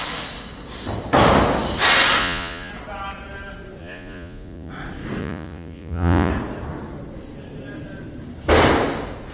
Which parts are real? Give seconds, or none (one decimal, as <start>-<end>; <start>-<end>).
0.0-2.2; 2.7-3.8; 4.7-5.2; 6.3-9.3